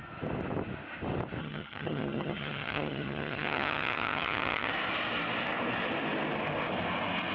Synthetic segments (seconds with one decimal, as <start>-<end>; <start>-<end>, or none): 1.4-4.7